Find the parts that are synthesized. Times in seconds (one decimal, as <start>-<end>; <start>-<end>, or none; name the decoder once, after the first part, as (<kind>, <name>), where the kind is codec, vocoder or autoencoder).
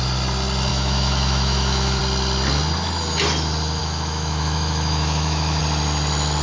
0.7-2.0 (autoencoder, DAC-VAE); 3.8-5.6